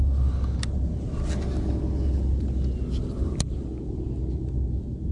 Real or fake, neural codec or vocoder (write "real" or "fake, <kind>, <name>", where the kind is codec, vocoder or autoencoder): real